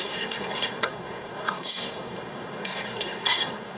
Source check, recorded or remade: remade